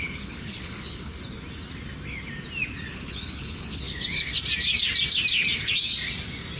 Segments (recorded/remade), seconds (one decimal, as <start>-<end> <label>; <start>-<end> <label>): 0.0-1.1 remade; 1.1-2.9 recorded; 2.9-4.3 remade; 4.3-6.6 recorded

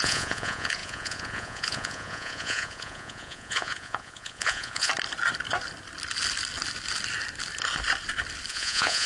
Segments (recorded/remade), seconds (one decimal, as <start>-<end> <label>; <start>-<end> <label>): 0.0-4.9 remade; 4.9-8.5 recorded; 8.5-9.1 remade

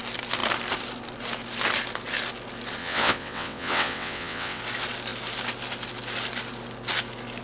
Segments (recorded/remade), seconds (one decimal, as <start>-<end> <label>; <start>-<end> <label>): 0.0-2.8 recorded; 2.8-4.6 remade; 4.6-7.4 recorded

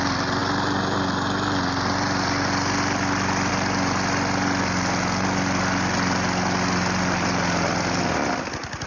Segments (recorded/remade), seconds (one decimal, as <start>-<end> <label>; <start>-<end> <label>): 0.0-8.9 recorded

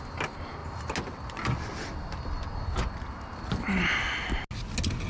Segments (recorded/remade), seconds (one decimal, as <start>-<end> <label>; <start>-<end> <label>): 0.0-5.1 recorded

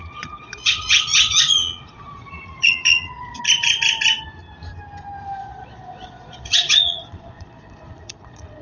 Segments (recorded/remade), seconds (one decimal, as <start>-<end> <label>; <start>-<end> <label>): 0.0-3.4 remade; 3.4-5.4 recorded; 5.4-8.6 remade

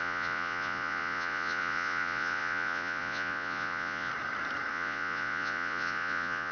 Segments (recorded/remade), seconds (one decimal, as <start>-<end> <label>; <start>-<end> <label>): 0.0-4.1 remade; 4.1-4.7 recorded; 4.7-6.5 remade